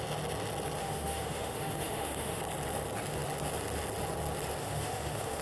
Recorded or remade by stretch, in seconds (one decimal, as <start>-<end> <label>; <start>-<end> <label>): 0.0-0.8 recorded; 0.8-2.4 remade; 2.4-4.6 recorded; 4.6-5.4 remade